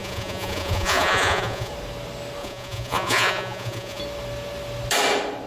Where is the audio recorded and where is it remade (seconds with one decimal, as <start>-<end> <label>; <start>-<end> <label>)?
0.0-1.7 remade; 1.7-2.4 recorded; 2.4-4.0 remade; 4.0-5.5 recorded